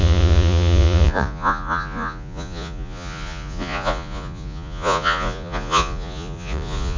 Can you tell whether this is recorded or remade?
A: remade